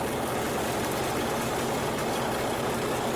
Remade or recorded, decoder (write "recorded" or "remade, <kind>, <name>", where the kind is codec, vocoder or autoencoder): recorded